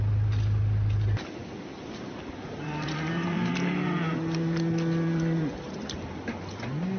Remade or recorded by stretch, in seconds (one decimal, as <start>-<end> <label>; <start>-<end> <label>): 0.0-1.4 recorded; 1.4-5.5 remade; 5.5-7.0 recorded